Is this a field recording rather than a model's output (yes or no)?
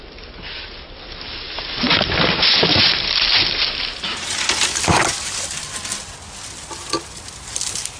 yes